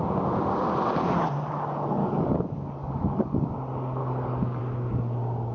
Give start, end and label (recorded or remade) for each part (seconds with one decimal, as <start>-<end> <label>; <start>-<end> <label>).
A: 0.0-2.0 recorded; 2.0-3.5 remade; 3.5-4.0 recorded; 4.0-4.6 remade; 4.6-5.5 recorded